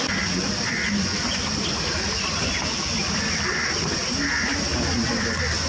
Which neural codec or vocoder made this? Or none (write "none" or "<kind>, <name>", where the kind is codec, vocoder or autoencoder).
none